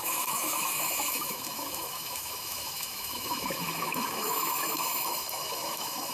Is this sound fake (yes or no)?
yes